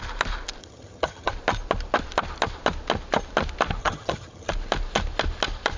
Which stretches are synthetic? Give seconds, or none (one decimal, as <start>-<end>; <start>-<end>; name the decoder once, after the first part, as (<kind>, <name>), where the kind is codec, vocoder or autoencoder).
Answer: 0.6-1.3 (vocoder, HiFi-GAN); 3.8-4.5